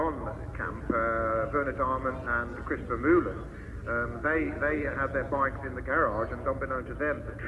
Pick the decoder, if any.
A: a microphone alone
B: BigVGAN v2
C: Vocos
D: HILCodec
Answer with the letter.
A